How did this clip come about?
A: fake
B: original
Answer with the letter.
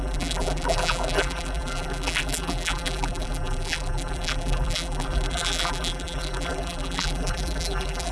A